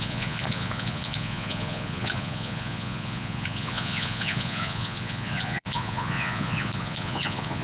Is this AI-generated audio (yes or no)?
yes